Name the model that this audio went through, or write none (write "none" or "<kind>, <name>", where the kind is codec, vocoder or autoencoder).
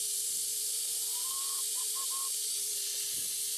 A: none